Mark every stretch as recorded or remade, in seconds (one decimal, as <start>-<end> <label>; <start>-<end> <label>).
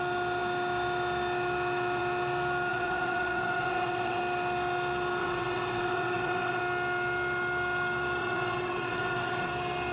0.0-2.7 recorded; 2.7-4.2 remade; 4.2-5.2 recorded; 5.2-6.6 remade; 6.6-8.2 recorded; 8.2-9.5 remade; 9.5-9.9 recorded